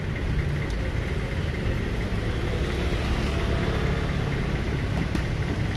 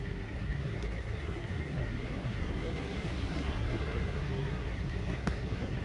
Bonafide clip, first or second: first